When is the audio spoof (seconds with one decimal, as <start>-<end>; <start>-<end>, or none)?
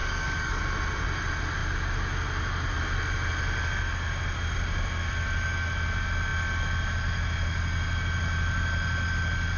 0.0-0.6